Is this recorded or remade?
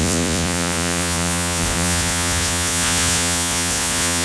remade